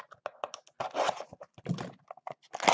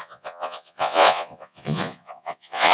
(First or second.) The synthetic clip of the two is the second